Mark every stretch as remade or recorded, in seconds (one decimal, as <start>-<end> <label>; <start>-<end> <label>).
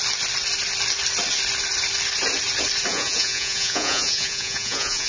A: 0.0-2.9 recorded; 2.9-5.1 remade